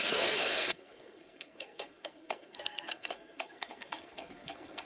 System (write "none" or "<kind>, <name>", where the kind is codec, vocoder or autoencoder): codec, SNAC